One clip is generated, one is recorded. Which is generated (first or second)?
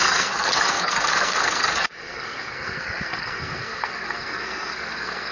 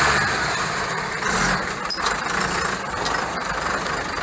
first